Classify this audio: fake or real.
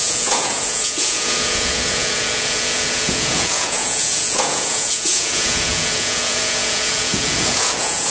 fake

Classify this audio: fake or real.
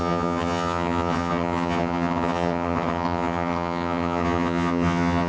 fake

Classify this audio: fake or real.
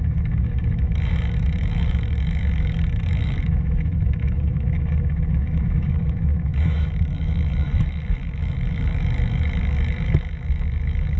fake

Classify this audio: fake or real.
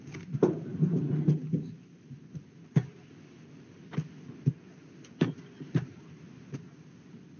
real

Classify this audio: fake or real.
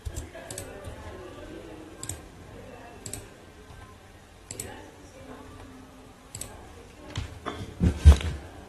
real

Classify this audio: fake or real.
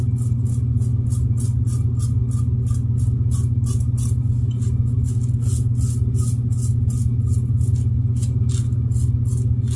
real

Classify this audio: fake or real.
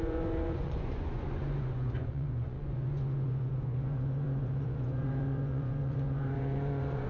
fake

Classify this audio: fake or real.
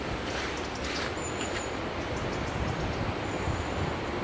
real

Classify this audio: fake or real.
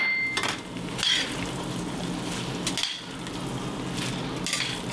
real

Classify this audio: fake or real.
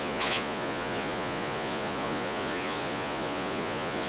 fake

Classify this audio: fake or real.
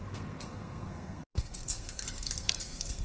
fake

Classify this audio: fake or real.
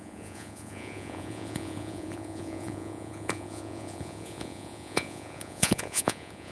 fake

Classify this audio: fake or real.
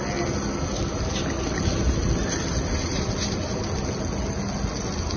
real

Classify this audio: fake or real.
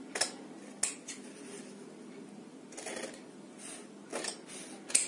real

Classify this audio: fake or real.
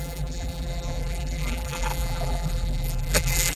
fake